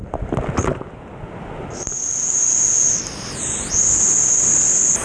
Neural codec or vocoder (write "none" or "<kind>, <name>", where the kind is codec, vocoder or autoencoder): none